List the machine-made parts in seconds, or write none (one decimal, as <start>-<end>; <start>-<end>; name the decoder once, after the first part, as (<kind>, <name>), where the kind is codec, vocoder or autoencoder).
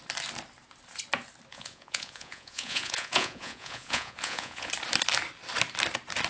1.5-4.7 (vocoder, Vocos)